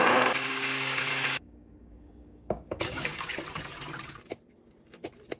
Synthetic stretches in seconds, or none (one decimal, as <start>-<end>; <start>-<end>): 0.0-3.3